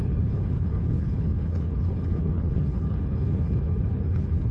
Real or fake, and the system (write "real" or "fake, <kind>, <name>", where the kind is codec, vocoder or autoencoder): fake, codec, HILCodec